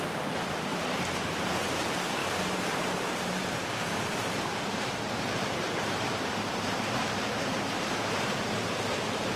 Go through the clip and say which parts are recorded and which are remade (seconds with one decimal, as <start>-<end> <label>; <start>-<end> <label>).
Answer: 0.0-9.4 remade

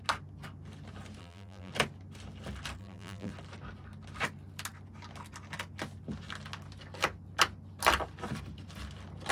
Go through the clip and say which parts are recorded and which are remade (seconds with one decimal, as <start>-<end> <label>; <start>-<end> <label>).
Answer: 0.0-1.2 recorded; 1.2-1.7 remade; 1.7-2.8 recorded; 2.8-3.3 remade; 3.3-9.3 recorded

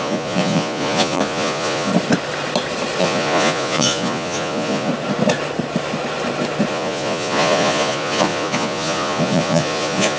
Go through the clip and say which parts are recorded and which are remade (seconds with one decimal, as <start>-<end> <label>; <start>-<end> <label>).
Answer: 0.0-1.9 remade; 1.9-3.0 recorded; 3.0-4.9 remade; 4.9-6.7 recorded; 6.7-10.2 remade

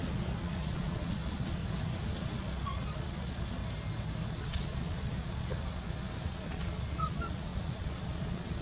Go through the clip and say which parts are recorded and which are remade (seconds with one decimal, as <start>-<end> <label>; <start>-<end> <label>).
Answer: 0.0-1.6 remade; 1.6-2.1 recorded; 2.1-3.6 remade; 3.6-4.3 recorded; 4.3-8.6 remade

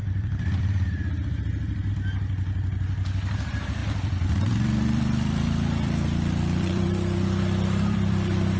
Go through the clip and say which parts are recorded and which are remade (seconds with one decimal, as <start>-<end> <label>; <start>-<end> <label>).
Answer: 0.0-1.9 remade; 1.9-3.8 recorded; 3.8-8.6 remade

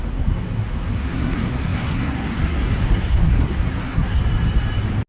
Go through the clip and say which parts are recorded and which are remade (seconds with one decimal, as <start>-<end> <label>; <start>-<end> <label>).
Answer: 0.0-4.2 remade; 4.2-5.1 recorded

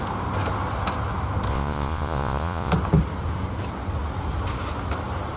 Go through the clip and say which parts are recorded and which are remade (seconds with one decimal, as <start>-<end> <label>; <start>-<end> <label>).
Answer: 0.0-1.5 recorded; 1.5-2.7 remade; 2.7-5.4 recorded

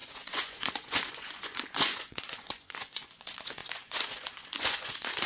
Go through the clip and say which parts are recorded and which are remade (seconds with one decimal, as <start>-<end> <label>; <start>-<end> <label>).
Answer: 0.0-5.3 remade